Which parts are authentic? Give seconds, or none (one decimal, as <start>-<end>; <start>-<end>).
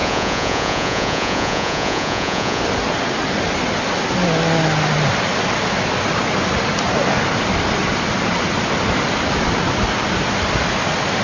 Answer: 2.6-11.2